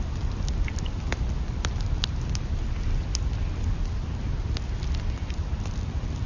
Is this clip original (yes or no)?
yes